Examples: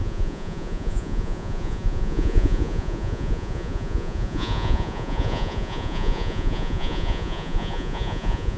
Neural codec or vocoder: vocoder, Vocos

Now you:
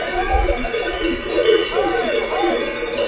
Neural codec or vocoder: vocoder, Vocos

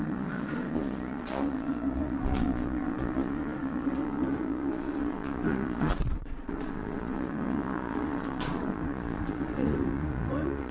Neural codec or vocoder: vocoder, Vocos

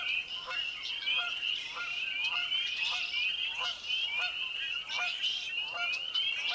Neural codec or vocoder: none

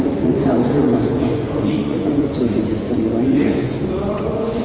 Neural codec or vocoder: vocoder, Vocos